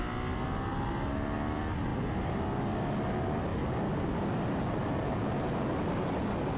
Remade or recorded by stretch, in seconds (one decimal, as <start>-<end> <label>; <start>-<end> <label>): 0.0-6.6 recorded